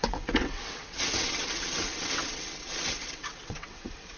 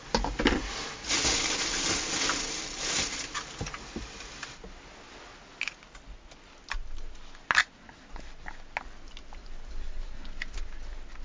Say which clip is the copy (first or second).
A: first